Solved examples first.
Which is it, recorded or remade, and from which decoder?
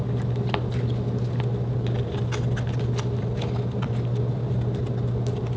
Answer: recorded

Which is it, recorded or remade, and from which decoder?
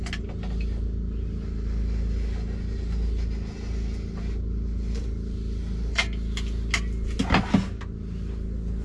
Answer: recorded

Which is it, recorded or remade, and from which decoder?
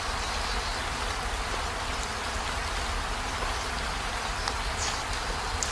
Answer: recorded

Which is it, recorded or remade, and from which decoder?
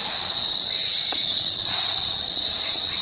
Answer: remade, vocoder, Vocos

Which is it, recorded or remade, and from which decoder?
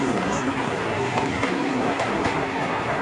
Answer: remade, codec, SNAC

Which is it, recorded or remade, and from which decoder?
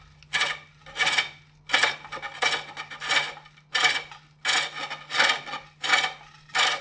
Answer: recorded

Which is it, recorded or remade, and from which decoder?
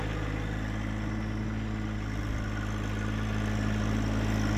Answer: recorded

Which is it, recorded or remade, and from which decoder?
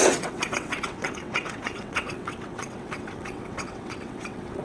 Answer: remade, vocoder, WaveNeXt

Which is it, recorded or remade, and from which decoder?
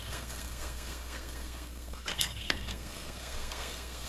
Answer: remade, codec, SNAC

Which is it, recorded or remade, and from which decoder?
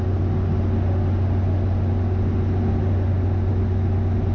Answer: recorded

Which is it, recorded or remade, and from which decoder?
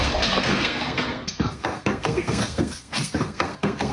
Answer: remade, codec, SNAC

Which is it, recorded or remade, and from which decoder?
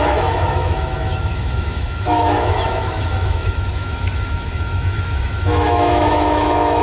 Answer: remade, autoencoder, DAC-VAE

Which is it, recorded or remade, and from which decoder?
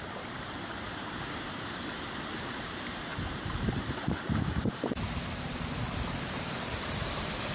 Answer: remade, vocoder, BigVGAN v2